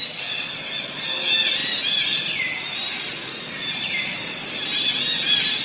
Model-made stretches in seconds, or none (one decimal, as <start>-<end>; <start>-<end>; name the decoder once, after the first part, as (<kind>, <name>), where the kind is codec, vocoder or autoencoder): none